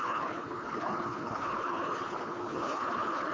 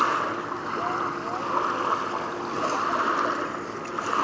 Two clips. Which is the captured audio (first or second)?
second